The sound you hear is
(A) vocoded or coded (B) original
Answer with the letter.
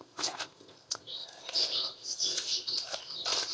A